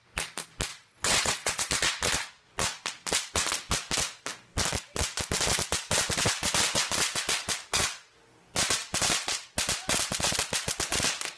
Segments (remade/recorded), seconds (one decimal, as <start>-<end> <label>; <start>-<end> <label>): 0.0-0.7 recorded; 0.7-1.7 remade; 1.7-11.4 recorded